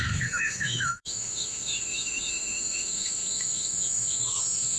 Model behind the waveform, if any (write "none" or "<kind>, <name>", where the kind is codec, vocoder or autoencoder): autoencoder, DAC-VAE